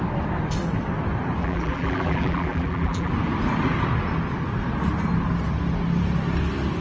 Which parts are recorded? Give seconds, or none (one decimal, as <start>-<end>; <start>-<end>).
0.0-1.4; 3.1-6.8